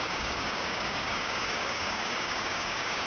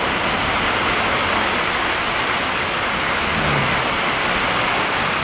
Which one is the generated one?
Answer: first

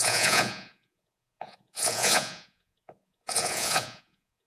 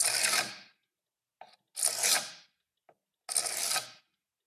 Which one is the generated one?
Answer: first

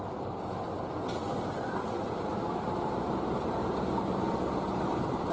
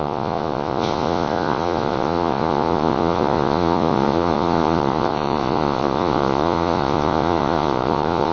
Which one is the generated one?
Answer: second